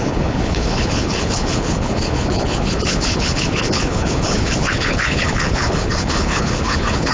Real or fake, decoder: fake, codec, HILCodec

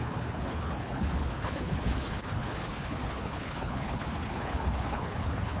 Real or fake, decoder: fake, codec, HILCodec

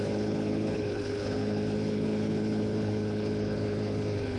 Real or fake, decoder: fake, codec, HILCodec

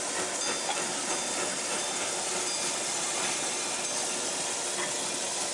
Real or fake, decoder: real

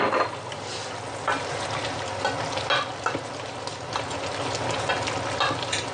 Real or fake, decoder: real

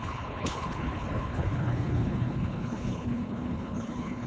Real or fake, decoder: fake, codec, HILCodec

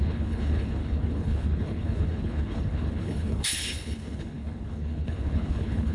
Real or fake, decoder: fake, codec, HILCodec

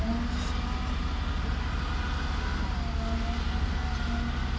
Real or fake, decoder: real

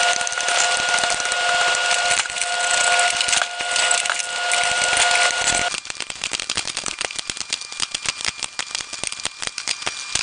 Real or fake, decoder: real